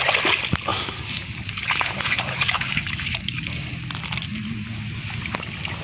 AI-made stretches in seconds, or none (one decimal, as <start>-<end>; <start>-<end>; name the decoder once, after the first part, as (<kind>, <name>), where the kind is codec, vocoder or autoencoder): 0.7-3.7 (codec, DAC)